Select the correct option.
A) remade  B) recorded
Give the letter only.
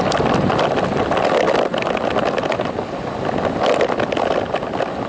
B